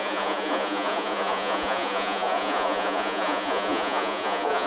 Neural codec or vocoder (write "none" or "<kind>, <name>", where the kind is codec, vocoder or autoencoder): vocoder, Vocos